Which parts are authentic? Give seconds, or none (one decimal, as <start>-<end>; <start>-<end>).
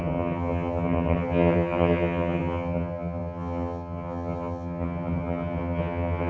none